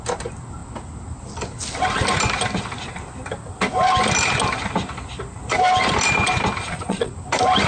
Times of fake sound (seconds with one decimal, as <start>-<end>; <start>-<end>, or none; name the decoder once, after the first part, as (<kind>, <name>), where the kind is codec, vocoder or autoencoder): 6.6-7.1 (vocoder, Vocos)